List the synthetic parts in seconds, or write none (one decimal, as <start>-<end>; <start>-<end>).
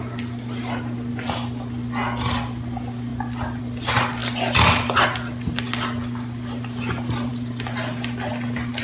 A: none